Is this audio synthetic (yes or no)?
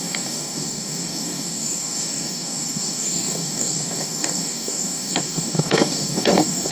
yes